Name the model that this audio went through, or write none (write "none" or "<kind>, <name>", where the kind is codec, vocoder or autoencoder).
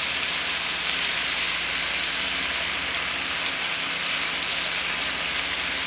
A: none